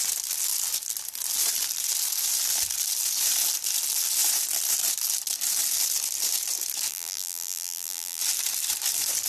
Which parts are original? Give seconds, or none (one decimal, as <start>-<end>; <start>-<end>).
0.0-6.9; 8.2-9.3